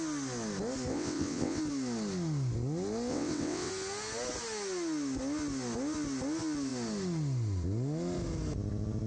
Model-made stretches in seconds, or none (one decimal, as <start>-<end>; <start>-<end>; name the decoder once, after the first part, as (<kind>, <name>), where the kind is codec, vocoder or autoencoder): 0.9-1.6 (vocoder, WaveNeXt); 3.1-3.7